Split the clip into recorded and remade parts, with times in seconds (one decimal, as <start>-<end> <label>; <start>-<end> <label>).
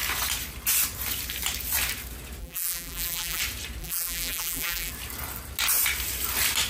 0.0-2.4 recorded; 2.4-3.4 remade; 3.4-3.8 recorded; 3.8-4.9 remade; 4.9-6.7 recorded